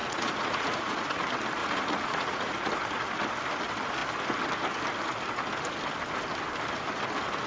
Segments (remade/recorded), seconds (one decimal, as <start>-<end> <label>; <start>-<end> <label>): 0.0-1.2 remade; 1.2-1.6 recorded; 1.6-2.7 remade; 2.7-7.5 recorded